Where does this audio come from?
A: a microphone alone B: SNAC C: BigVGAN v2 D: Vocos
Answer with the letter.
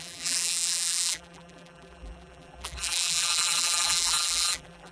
C